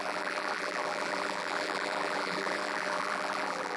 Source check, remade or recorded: remade